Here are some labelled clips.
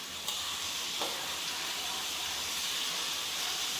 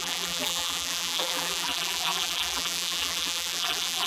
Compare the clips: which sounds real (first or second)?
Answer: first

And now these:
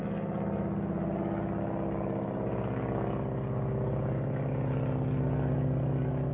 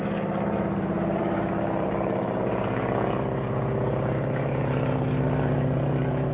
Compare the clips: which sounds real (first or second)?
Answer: first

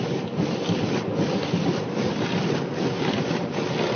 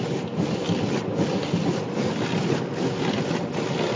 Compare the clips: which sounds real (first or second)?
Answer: second